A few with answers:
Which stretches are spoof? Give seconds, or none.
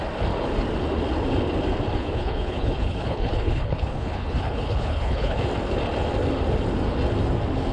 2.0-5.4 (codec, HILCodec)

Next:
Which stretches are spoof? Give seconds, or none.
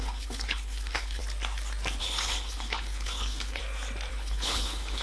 0.0-1.2 (codec, HILCodec); 2.0-3.6; 4.1-5.0